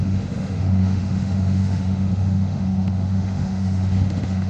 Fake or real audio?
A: fake